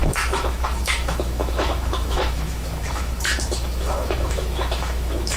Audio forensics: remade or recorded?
remade